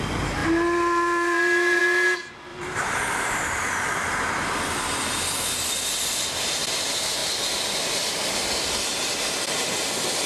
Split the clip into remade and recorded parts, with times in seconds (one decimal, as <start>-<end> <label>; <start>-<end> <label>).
0.0-0.4 recorded; 0.4-1.8 remade; 1.8-2.5 recorded; 2.5-3.7 remade; 3.7-10.3 recorded

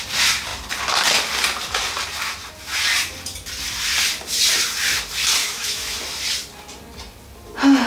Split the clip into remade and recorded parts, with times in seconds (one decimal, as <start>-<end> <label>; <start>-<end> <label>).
0.0-5.4 recorded; 5.4-6.0 remade; 6.0-7.9 recorded

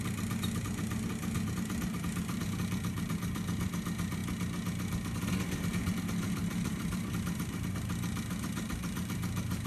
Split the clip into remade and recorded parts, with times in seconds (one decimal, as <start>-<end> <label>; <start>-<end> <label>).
0.0-4.2 remade; 4.2-5.2 recorded; 5.2-9.7 remade

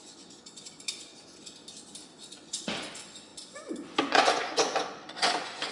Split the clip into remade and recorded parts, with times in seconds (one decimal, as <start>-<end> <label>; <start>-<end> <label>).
0.0-1.6 remade; 1.6-2.3 recorded; 2.3-5.7 remade

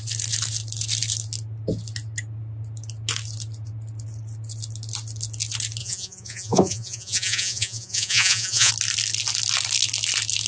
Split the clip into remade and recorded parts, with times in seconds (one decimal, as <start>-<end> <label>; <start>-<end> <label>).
0.0-5.8 recorded; 5.8-8.7 remade; 8.7-10.5 recorded

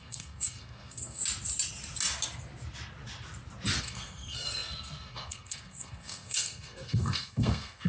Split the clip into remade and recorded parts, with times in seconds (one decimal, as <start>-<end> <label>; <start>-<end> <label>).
0.0-1.2 remade; 1.2-3.8 recorded; 3.8-7.9 remade

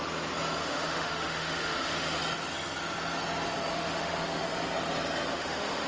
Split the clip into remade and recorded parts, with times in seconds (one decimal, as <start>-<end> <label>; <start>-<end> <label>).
0.0-0.6 recorded; 0.6-2.2 remade; 2.2-3.7 recorded; 3.7-4.4 remade; 4.4-5.3 recorded; 5.3-5.9 remade

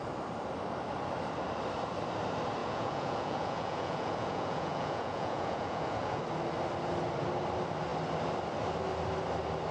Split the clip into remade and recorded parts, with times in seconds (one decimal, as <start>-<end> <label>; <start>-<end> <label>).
0.0-2.6 recorded; 2.6-6.2 remade; 6.2-9.7 recorded